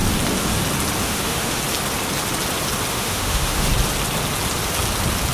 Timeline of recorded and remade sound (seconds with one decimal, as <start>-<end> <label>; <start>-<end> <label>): 0.0-1.0 recorded; 1.0-1.6 remade; 1.6-2.9 recorded; 2.9-3.7 remade; 3.7-5.3 recorded